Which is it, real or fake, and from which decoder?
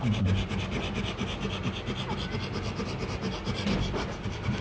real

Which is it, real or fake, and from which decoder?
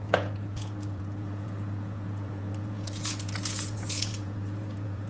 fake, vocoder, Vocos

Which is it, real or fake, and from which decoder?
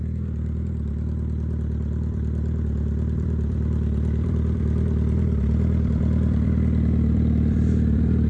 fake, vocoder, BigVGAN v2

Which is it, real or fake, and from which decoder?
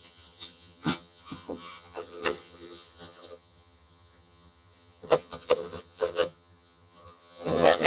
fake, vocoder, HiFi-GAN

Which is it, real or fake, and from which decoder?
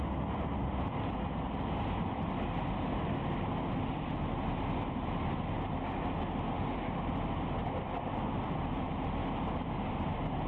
real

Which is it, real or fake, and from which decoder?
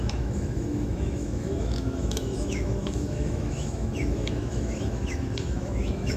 fake, autoencoder, DAC-VAE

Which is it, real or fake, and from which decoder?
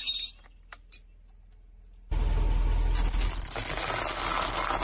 real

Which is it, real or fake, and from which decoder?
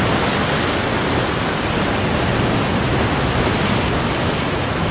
real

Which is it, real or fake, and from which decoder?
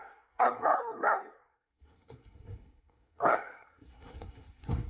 fake, codec, SNAC